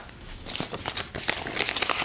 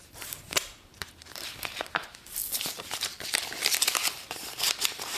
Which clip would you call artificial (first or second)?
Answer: second